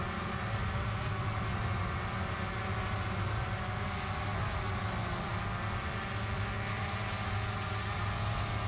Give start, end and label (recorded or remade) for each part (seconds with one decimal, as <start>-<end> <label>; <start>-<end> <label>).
0.0-8.7 recorded